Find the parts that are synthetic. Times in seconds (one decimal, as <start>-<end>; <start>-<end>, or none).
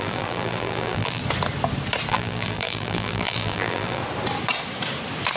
0.0-1.2; 2.1-4.0